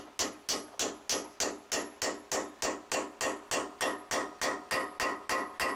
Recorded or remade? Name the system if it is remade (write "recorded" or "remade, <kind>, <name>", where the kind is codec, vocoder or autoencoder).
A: recorded